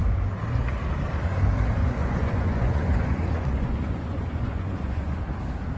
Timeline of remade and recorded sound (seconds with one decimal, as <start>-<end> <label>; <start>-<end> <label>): 0.0-1.8 recorded; 1.8-5.2 remade; 5.2-5.8 recorded